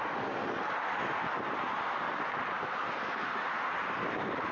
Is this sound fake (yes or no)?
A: no